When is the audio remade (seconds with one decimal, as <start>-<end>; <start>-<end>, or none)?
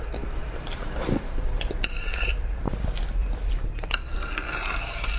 0.4-3.5